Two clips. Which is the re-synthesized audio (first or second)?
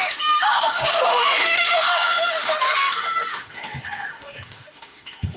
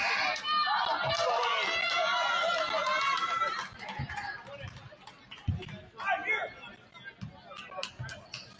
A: first